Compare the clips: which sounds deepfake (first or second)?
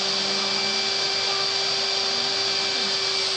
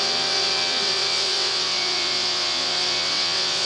second